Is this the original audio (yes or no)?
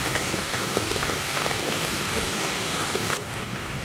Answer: no